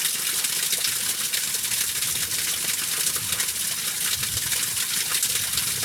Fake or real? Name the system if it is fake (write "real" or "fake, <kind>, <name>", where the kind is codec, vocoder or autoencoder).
real